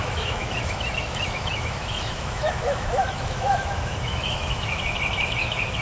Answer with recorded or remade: remade